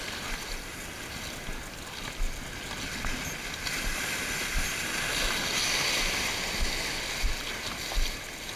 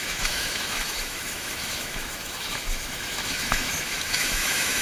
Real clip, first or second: first